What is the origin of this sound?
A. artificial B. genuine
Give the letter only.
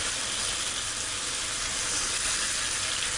B